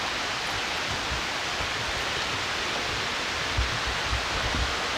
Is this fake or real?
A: real